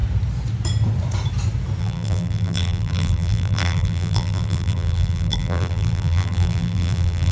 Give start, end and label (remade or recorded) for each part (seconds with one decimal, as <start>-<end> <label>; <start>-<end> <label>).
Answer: 0.0-1.8 recorded; 1.8-7.3 remade